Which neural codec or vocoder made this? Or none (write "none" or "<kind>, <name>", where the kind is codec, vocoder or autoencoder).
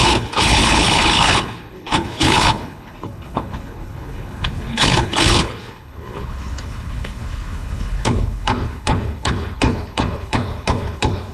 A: codec, HILCodec